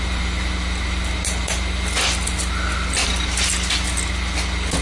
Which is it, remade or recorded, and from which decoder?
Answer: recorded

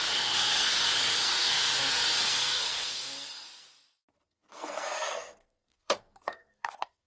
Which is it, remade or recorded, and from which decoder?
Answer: remade, codec, SNAC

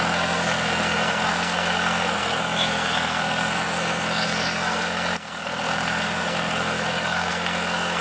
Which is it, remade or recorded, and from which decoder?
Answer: remade, codec, SNAC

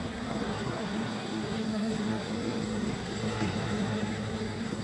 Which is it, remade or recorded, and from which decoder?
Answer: remade, codec, SNAC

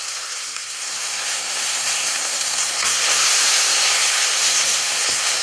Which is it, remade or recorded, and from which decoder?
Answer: remade, codec, SNAC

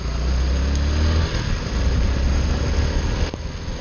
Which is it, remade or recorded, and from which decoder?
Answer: recorded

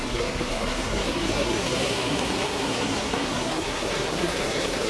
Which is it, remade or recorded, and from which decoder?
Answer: remade, codec, SNAC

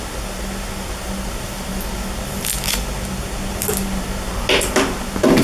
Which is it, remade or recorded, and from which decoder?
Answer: recorded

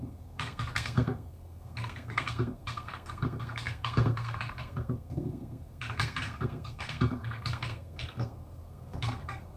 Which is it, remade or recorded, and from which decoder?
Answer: remade, codec, SNAC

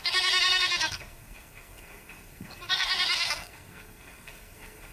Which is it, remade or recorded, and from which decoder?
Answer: remade, codec, SNAC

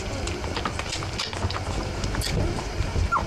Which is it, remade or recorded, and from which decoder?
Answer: recorded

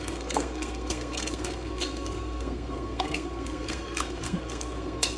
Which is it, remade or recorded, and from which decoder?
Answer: remade, codec, SNAC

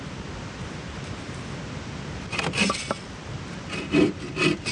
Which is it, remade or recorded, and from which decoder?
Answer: recorded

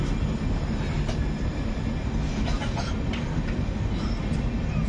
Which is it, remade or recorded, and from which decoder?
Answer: recorded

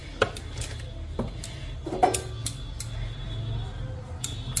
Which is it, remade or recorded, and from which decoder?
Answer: recorded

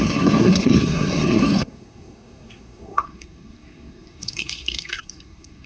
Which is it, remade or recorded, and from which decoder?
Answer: remade, codec, SNAC